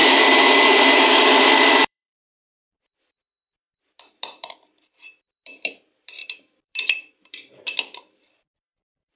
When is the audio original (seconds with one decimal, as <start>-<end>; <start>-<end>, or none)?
0.0-1.1